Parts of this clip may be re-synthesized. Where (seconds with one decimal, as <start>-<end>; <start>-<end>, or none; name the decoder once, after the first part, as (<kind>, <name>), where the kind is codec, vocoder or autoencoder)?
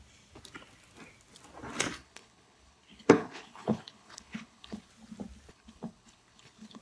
2.0-4.9 (codec, HILCodec); 5.5-6.8